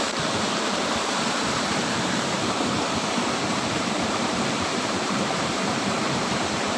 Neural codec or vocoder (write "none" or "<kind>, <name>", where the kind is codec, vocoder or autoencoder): vocoder, BigVGAN v2